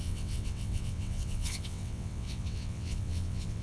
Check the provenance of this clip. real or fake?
fake